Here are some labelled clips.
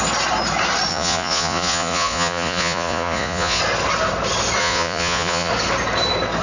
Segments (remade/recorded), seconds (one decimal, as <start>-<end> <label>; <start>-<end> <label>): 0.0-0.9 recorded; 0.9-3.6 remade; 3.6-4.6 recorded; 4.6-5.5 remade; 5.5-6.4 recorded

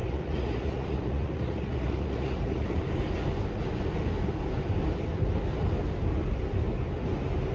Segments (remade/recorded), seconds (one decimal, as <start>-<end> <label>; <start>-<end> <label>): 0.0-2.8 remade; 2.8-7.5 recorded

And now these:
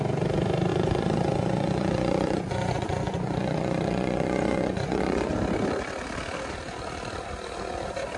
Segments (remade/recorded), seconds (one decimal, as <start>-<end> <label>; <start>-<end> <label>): 0.0-0.7 recorded; 0.7-5.3 remade; 5.3-8.2 recorded